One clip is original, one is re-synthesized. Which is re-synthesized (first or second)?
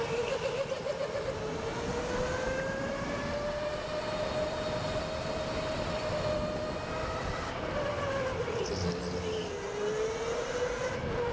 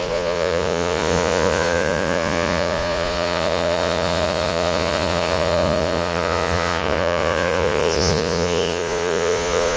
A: second